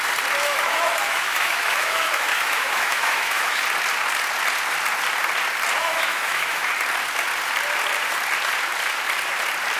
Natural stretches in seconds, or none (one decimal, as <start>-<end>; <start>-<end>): 0.0-0.4; 3.6-5.8; 6.7-9.8